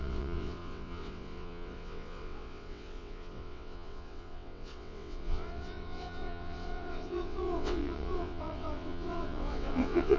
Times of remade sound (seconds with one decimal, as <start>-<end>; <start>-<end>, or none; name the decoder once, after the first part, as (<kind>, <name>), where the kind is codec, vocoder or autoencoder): 0.0-10.2 (vocoder, WaveNeXt)